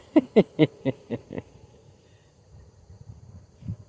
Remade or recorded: remade